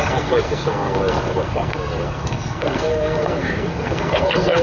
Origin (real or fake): fake